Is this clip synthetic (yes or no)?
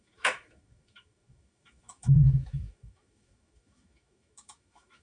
yes